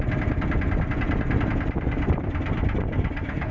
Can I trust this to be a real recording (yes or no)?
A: yes